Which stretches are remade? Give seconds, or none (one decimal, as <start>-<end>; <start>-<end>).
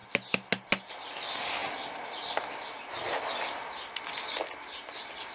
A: 0.9-1.6; 4.8-5.3